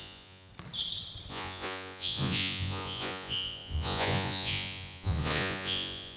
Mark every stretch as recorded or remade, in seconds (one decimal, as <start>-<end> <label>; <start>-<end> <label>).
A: 0.0-0.5 remade; 0.5-1.3 recorded; 1.3-6.2 remade

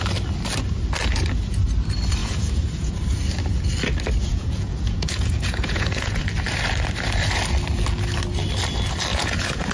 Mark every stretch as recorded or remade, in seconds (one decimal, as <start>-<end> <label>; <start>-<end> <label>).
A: 0.0-2.2 recorded; 2.2-2.9 remade; 2.9-4.2 recorded; 4.2-6.2 remade; 6.2-9.1 recorded; 9.1-9.7 remade